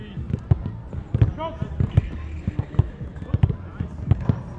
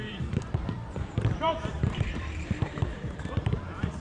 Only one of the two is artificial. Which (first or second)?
second